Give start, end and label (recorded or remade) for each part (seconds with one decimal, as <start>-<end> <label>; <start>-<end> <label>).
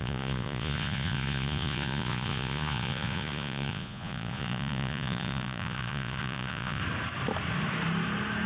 0.0-6.8 remade; 6.8-8.5 recorded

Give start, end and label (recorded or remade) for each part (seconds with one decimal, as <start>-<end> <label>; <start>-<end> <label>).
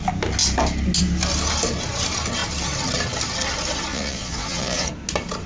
0.0-3.9 recorded; 3.9-4.9 remade; 4.9-5.5 recorded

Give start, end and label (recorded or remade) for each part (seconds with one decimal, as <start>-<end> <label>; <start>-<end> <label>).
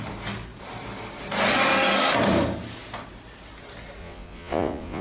0.0-4.0 recorded; 4.0-5.0 remade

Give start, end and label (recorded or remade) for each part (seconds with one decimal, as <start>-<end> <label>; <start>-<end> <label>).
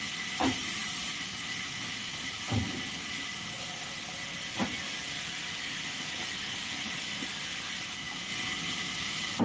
0.0-9.4 recorded